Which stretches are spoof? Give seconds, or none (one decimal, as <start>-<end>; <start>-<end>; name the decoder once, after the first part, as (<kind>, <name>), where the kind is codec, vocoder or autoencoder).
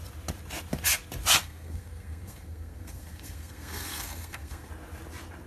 1.4-4.7 (codec, SNAC)